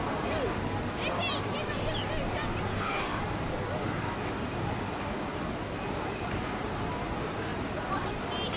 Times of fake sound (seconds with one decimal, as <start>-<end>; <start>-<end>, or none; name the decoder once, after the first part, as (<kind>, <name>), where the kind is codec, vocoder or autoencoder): 2.7-3.2 (autoencoder, DAC-VAE)